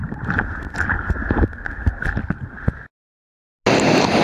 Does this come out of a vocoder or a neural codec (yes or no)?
no